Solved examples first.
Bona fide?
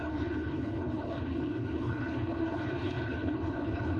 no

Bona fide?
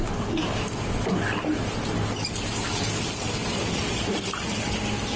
yes